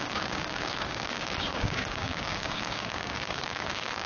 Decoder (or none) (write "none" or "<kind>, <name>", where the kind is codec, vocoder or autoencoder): codec, DAC